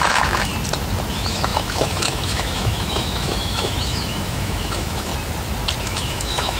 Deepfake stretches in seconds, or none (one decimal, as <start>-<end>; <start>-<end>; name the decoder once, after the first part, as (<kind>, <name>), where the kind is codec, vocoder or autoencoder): 0.0-0.5 (autoencoder, DAC-VAE); 1.1-5.1; 5.8-6.6